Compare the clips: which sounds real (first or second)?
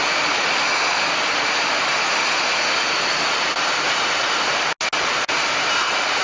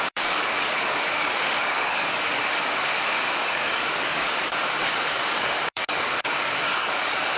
first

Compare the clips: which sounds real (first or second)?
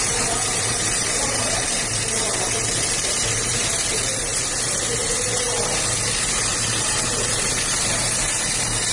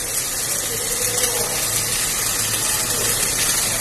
second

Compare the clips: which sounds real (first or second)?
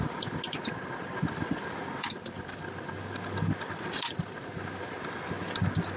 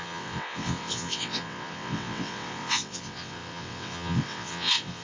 first